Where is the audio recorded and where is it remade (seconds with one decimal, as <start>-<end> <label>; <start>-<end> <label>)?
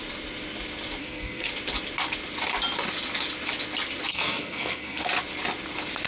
0.0-1.0 recorded; 1.0-1.5 remade; 1.5-4.1 recorded; 4.1-5.1 remade; 5.1-6.1 recorded